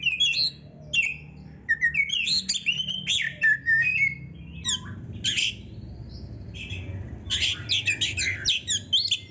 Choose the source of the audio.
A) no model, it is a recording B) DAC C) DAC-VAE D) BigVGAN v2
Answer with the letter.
A